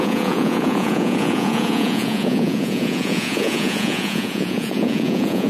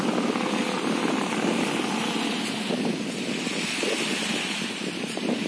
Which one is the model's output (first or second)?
first